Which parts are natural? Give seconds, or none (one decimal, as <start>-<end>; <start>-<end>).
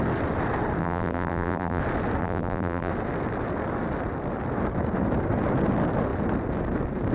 0.0-0.8; 1.8-2.2; 2.9-7.1